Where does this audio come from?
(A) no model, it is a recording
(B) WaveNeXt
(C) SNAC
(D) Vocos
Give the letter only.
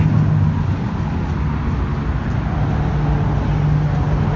A